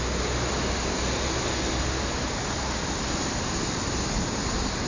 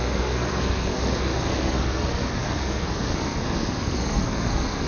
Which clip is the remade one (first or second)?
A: second